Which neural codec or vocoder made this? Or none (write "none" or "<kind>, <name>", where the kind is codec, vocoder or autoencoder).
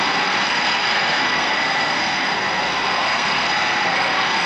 codec, SNAC